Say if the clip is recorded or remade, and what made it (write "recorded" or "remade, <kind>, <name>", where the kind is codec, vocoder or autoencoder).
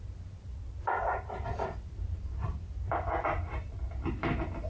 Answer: remade, vocoder, BigVGAN v2